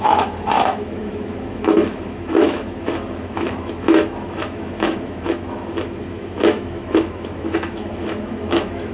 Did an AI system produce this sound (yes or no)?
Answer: yes